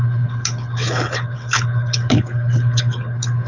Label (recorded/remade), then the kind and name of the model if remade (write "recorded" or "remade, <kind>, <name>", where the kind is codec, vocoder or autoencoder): remade, codec, HILCodec